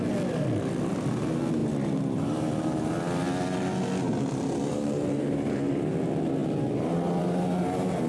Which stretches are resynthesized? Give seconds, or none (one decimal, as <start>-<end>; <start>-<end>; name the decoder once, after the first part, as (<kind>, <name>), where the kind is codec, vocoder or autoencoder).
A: 1.6-2.9 (vocoder, BigVGAN v2); 4.7-5.7